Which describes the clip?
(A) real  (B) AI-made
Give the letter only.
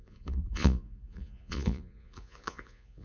B